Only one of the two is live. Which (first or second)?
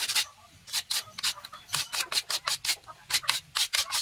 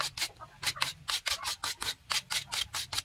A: second